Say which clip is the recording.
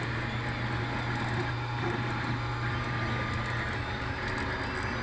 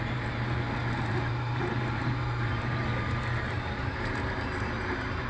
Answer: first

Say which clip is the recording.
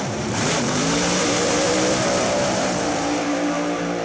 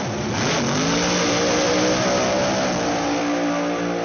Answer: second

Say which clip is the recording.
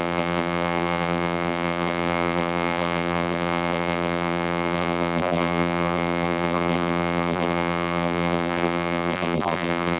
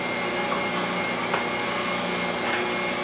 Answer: second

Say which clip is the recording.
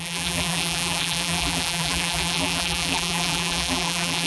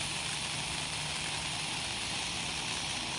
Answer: second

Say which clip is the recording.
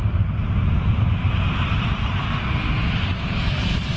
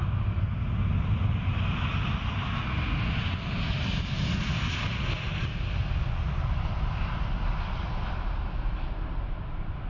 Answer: second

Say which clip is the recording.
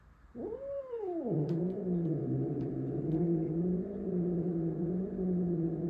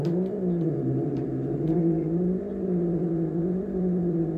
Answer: second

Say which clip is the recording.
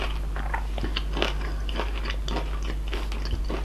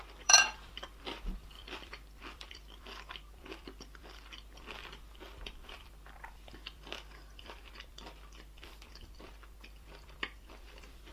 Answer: first